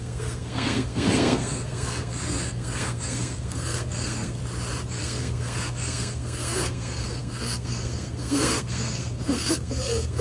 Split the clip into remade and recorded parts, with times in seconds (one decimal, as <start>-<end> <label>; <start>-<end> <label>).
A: 0.0-4.4 remade; 4.4-5.0 recorded; 5.0-10.2 remade